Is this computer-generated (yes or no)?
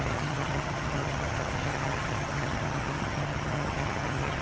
yes